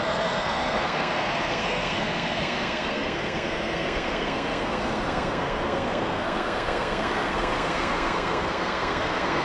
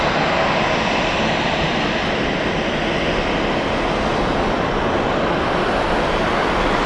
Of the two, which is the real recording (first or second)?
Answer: second